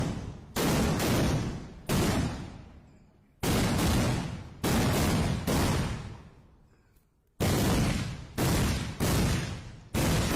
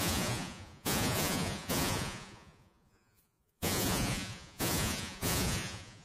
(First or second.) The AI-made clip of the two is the second